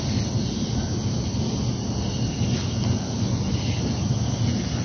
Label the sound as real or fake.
real